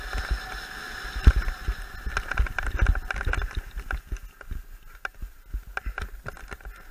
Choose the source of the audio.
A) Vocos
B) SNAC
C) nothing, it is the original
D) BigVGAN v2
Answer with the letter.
C